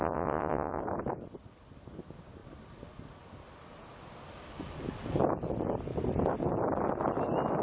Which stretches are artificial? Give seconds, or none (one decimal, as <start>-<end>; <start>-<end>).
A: 0.0-0.8